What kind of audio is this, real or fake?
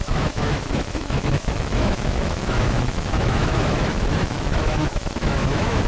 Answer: fake